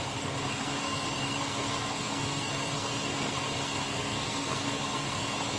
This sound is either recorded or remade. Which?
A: remade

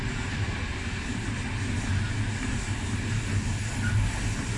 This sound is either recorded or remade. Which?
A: recorded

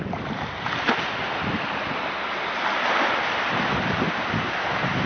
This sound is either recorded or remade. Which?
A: recorded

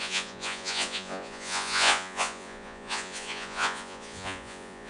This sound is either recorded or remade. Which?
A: remade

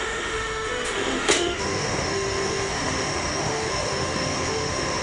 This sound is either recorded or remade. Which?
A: remade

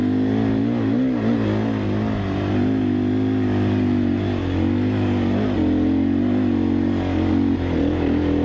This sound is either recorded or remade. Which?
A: recorded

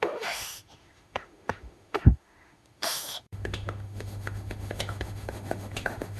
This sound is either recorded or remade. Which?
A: remade